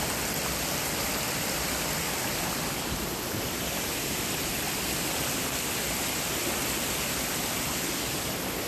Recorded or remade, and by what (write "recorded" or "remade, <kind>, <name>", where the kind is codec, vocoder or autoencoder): recorded